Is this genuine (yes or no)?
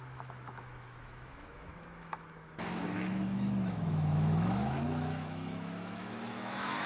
no